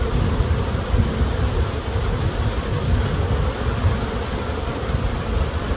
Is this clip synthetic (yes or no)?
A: no